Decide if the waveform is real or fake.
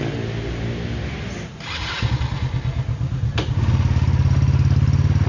real